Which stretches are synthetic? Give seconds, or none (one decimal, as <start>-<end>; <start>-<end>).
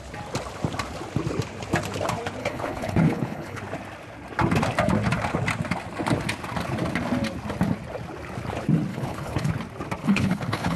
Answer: 2.4-3.6; 8.9-9.5; 10.0-10.8